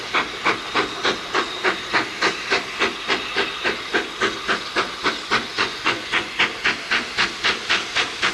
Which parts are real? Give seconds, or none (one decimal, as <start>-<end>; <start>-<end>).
0.0-5.5; 6.4-8.3